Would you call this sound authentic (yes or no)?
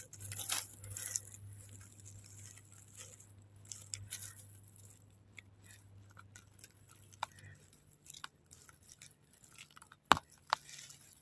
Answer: yes